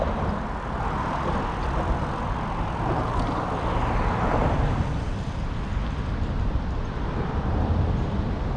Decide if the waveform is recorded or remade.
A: recorded